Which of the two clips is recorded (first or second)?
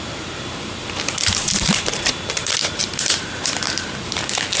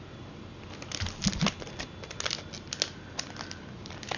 second